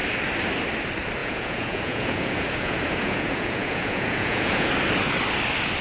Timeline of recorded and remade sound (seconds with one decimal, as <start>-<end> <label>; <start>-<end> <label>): 0.0-1.2 recorded; 1.2-4.7 remade; 4.7-5.8 recorded

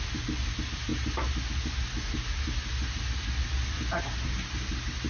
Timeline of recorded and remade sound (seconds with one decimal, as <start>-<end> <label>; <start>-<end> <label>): 0.0-5.1 recorded

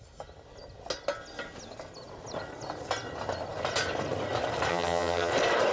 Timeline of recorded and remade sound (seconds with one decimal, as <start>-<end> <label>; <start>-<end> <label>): 0.0-4.7 recorded; 4.7-5.3 remade; 5.3-5.7 recorded

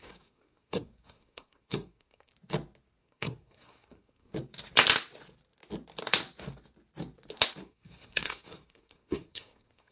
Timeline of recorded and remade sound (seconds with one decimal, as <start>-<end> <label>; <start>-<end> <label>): 0.0-2.3 remade; 2.3-3.0 recorded; 3.0-4.3 remade; 4.3-7.6 recorded; 7.6-9.9 remade

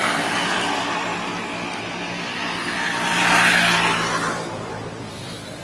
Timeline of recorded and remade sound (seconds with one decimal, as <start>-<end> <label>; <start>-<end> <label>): 0.0-1.1 remade; 1.1-4.5 recorded; 4.5-5.6 remade